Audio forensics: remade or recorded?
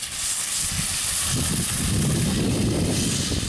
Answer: recorded